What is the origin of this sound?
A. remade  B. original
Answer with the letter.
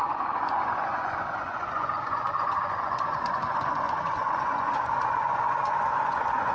A